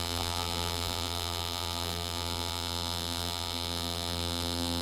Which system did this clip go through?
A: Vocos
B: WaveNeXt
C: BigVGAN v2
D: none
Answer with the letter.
C